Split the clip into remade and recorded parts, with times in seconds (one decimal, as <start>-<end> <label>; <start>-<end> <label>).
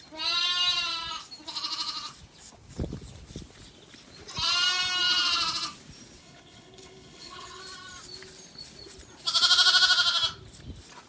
0.0-6.2 recorded; 6.2-7.6 remade; 7.6-11.1 recorded